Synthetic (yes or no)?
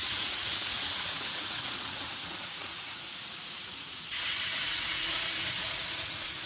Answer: yes